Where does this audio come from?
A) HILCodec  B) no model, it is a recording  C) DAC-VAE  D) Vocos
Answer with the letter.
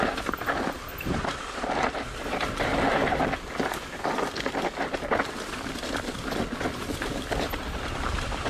B